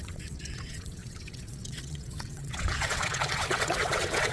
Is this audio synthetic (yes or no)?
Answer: yes